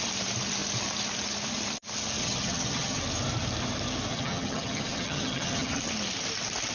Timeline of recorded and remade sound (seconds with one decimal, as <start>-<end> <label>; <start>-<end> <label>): 0.0-2.2 recorded; 2.2-3.0 remade; 3.0-4.1 recorded; 4.1-5.8 remade; 5.8-6.7 recorded